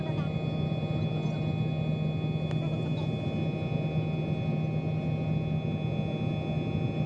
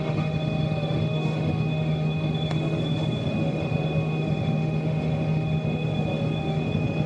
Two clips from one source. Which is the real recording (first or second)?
first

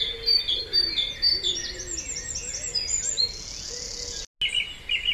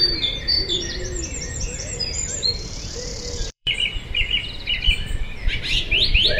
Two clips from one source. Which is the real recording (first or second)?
first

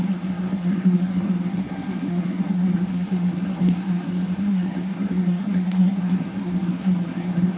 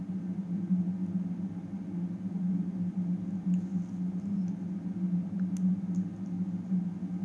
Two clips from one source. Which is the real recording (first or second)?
second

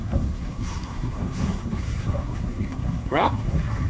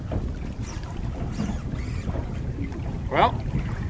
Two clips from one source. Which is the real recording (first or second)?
second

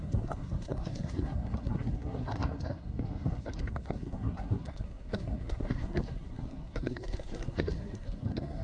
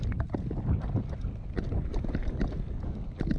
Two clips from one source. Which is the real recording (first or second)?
second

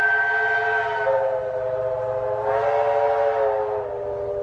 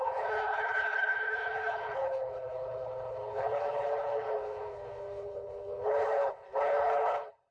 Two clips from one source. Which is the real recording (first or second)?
first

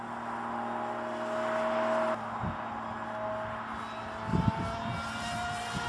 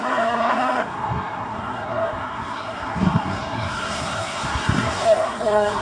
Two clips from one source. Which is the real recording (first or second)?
first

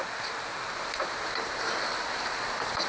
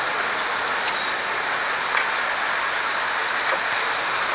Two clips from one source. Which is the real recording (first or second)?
second